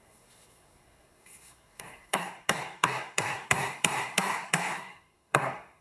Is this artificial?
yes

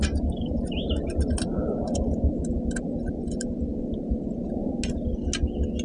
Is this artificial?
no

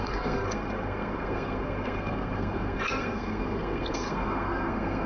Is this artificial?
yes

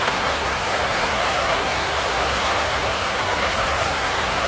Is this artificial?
yes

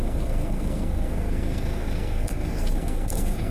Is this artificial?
yes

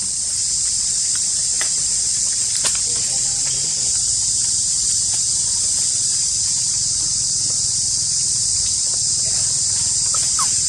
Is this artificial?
no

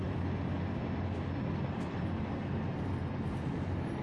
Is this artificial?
no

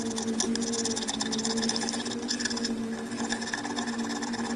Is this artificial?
no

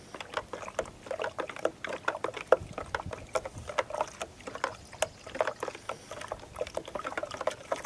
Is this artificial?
no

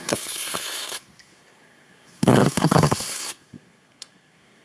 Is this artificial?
yes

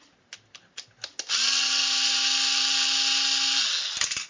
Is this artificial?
no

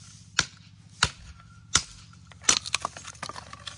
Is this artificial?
no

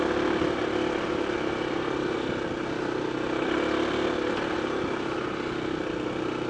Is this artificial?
no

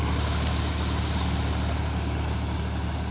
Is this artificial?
no